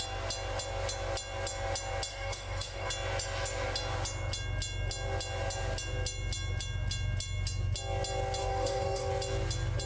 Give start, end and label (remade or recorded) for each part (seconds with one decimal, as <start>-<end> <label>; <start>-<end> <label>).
0.0-2.1 recorded; 2.1-2.9 remade; 2.9-8.4 recorded; 8.4-9.1 remade; 9.1-9.9 recorded